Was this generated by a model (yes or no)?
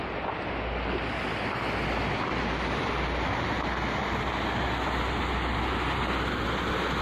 no